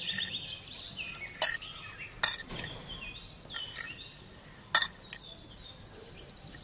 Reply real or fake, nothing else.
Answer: real